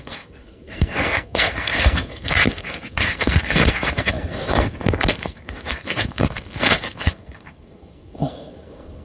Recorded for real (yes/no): no